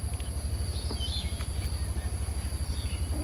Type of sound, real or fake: real